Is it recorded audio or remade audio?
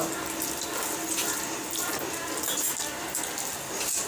recorded